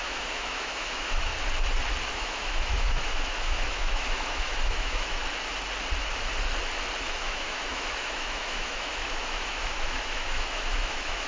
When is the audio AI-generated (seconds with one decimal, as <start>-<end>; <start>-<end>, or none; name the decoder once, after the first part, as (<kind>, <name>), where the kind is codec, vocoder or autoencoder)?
0.0-1.3 (autoencoder, DAC-VAE); 2.1-5.2; 7.0-11.3